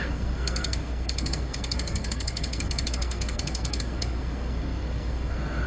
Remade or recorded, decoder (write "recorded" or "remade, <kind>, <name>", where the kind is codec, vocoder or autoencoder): remade, codec, SNAC